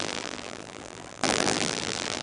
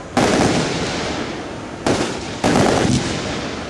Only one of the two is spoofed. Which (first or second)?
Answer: first